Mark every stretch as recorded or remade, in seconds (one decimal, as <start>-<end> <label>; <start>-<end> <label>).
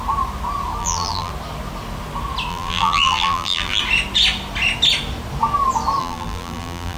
0.0-0.8 recorded; 0.8-1.3 remade; 1.3-2.5 recorded; 2.5-3.8 remade; 3.8-6.0 recorded; 6.0-7.0 remade